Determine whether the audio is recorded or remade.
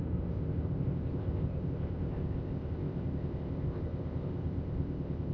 remade